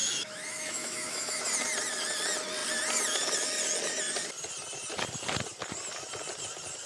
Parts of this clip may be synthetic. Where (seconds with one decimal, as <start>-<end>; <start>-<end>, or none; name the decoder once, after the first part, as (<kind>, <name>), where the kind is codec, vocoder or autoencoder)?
0.0-1.4 (autoencoder, DAC-VAE)